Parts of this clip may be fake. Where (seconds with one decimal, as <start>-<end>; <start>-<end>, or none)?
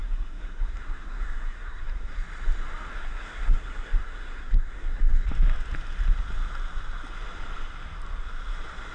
0.0-2.2; 2.9-5.0